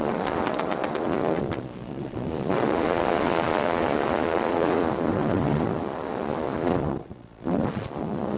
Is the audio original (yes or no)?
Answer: no